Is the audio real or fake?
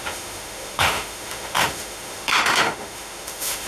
fake